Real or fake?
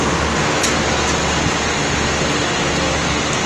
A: real